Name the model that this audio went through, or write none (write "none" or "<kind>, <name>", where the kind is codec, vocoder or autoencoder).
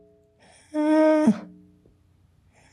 none